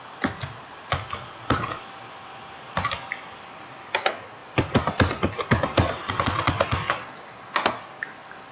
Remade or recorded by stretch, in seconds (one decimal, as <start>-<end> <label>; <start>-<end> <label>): 0.0-4.4 recorded; 4.4-6.1 remade; 6.1-8.5 recorded